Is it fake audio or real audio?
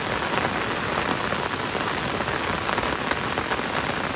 real